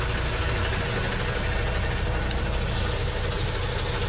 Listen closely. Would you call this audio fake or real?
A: real